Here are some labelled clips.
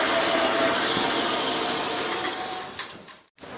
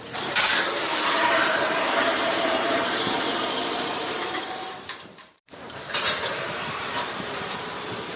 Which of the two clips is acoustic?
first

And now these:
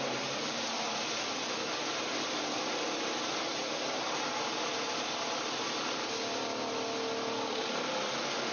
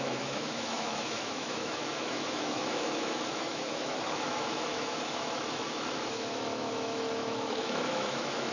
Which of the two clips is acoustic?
first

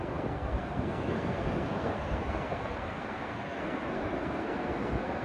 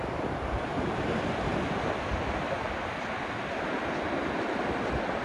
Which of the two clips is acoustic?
second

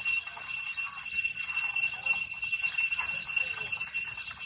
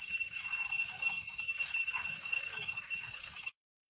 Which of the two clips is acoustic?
first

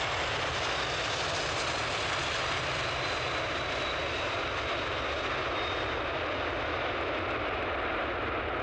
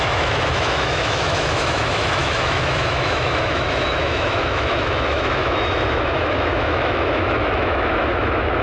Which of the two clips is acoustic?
first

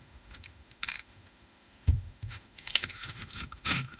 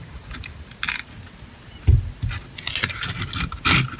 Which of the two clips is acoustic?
second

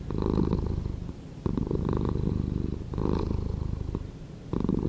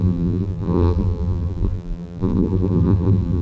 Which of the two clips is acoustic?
first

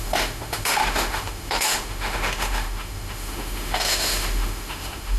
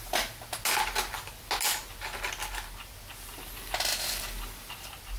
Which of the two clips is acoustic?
second